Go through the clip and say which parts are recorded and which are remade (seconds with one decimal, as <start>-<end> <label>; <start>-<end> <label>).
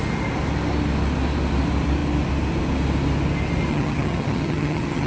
0.0-3.7 recorded; 3.7-5.1 remade